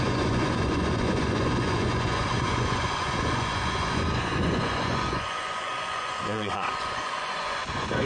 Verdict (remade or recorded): remade